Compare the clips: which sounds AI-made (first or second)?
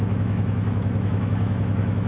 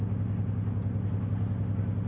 first